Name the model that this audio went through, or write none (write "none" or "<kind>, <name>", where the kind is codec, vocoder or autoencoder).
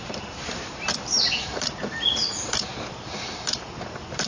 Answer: vocoder, BigVGAN v2